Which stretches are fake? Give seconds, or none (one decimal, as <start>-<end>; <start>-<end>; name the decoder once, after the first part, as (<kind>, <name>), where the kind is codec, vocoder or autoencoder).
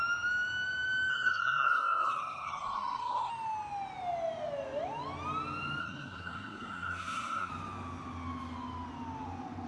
1.1-3.3 (codec, SNAC); 5.8-7.5